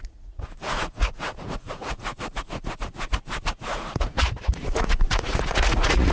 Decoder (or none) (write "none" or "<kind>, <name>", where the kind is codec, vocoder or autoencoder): vocoder, Vocos